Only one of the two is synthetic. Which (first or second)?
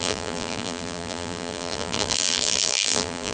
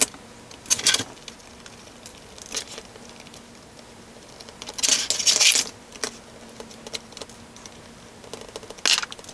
first